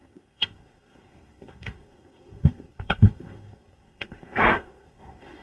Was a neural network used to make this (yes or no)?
yes